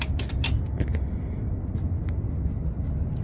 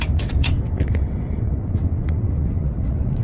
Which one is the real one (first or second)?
first